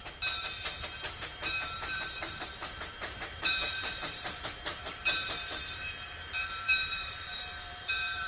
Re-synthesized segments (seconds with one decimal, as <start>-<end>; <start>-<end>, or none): 0.8-8.3